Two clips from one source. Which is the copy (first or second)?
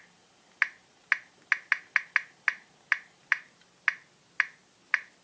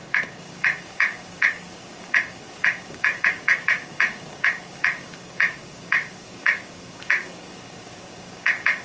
second